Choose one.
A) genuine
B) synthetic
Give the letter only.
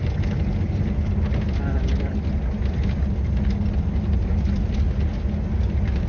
A